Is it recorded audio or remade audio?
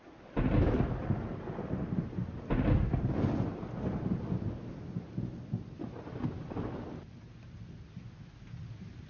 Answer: recorded